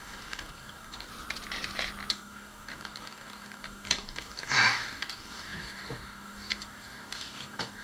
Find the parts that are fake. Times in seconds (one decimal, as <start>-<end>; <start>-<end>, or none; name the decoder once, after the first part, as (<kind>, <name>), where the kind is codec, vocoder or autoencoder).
0.0-1.1 (codec, DAC); 2.1-7.8